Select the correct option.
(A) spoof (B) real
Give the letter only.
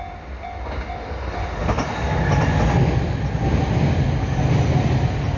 B